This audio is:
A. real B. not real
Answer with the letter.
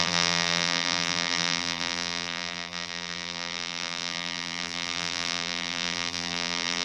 B